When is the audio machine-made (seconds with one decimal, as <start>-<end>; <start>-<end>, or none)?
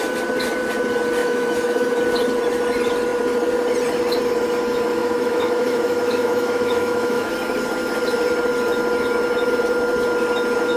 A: 1.2-2.0; 5.0-7.3